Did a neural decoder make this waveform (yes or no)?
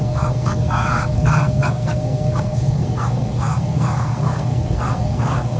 yes